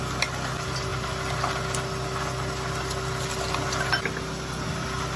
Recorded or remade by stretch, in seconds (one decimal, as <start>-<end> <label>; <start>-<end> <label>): 0.0-5.2 recorded